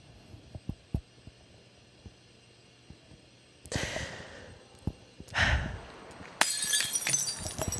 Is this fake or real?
real